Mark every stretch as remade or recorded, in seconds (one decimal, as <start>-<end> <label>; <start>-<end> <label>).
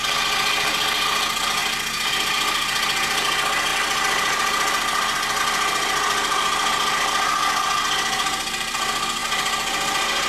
0.0-10.3 recorded